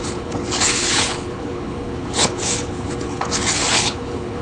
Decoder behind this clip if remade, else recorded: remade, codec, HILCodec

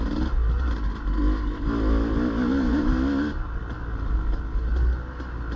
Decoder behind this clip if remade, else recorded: recorded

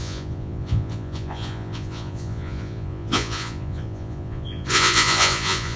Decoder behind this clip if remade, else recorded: remade, vocoder, Vocos